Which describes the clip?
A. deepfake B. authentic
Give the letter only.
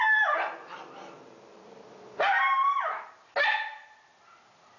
B